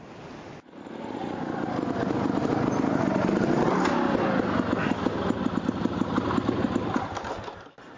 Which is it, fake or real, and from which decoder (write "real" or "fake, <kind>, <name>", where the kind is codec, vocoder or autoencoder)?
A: real